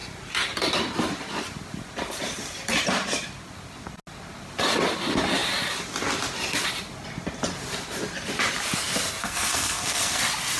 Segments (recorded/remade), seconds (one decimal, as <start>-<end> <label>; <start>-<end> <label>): 0.0-9.2 recorded; 9.2-10.2 remade; 10.2-10.6 recorded